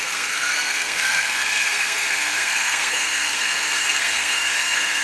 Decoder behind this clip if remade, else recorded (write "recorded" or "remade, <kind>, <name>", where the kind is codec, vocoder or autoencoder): remade, codec, SNAC